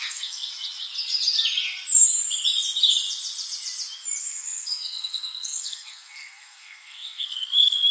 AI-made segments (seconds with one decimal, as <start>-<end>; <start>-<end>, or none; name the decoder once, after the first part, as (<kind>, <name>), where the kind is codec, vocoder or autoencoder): 0.0-0.5 (codec, SNAC); 4.2-7.9